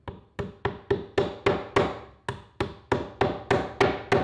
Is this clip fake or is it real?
real